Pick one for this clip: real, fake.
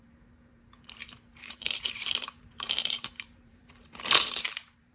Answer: fake